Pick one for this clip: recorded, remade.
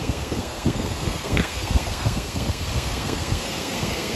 remade